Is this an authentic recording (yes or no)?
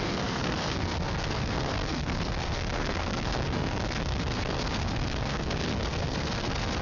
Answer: no